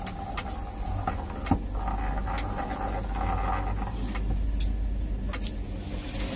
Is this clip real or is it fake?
real